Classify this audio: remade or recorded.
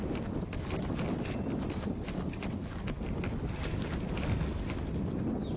recorded